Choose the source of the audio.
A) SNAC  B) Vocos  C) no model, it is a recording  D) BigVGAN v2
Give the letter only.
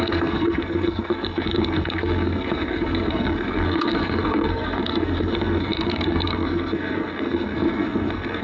A